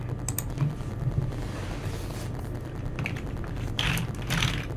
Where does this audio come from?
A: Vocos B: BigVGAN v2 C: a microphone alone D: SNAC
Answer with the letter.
C